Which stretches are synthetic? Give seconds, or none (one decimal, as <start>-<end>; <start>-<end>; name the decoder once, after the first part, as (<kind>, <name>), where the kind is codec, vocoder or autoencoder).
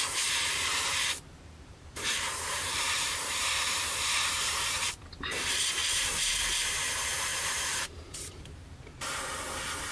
0.5-5.3 (vocoder, BigVGAN v2); 5.8-6.3; 7.3-8.8